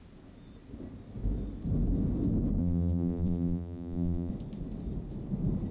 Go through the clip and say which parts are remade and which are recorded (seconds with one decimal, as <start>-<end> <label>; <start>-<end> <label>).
0.0-2.6 recorded; 2.6-4.3 remade; 4.3-5.7 recorded